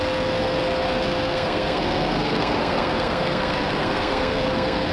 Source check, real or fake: fake